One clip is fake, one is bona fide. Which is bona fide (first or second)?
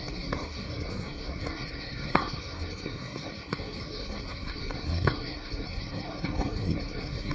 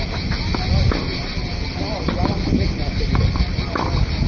second